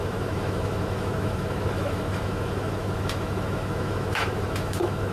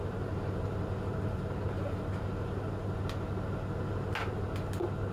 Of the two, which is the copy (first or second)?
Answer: first